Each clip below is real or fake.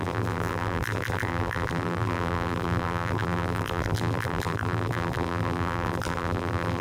fake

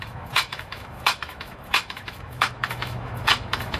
fake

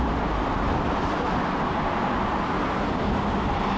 real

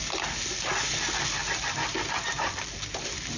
real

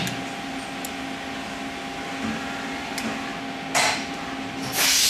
real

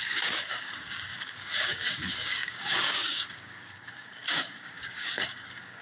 fake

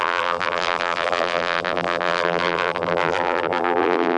fake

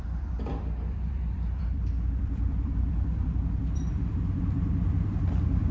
fake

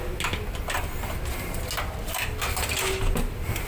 real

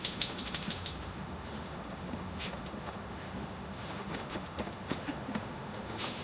fake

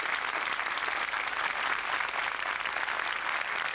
real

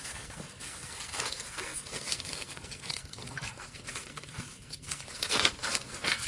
fake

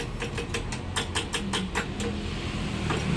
real